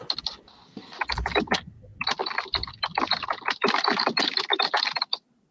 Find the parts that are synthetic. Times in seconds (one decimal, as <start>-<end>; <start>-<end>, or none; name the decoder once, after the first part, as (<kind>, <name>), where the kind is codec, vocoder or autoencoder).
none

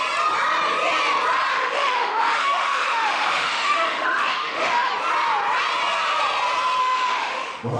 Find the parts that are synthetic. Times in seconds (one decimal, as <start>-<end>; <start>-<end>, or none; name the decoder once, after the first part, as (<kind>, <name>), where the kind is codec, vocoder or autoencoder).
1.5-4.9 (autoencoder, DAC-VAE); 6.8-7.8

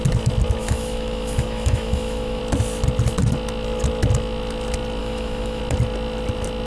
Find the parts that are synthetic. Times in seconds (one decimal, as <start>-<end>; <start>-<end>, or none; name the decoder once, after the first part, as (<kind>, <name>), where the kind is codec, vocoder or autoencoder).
0.6-2.4 (autoencoder, DAC-VAE); 5.0-5.6

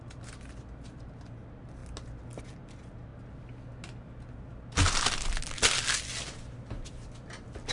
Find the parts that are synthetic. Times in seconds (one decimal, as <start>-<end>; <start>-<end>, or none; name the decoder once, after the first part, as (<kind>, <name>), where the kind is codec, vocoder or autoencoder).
none